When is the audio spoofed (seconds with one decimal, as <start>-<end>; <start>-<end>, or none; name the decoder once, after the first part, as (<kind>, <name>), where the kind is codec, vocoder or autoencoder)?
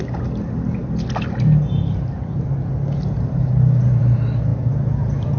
none